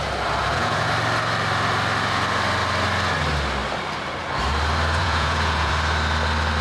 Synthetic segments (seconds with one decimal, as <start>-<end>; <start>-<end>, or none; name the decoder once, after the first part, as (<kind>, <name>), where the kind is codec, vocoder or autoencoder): 0.4-0.9 (vocoder, Vocos); 5.0-5.7